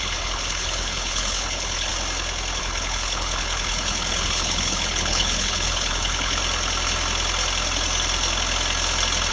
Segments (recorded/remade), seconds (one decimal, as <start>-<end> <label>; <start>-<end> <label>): 0.0-1.9 remade; 1.9-2.6 recorded; 2.6-6.4 remade; 6.4-9.3 recorded